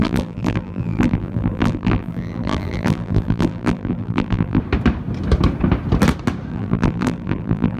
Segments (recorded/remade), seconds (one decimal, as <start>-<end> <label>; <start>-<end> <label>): 0.0-4.6 remade; 4.6-6.5 recorded; 6.5-7.8 remade